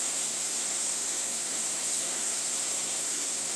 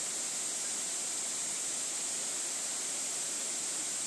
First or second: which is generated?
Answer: first